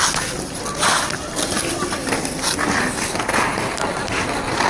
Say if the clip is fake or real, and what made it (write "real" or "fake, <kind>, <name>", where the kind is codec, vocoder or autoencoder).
real